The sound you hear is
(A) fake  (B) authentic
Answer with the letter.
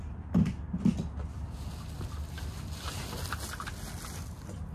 B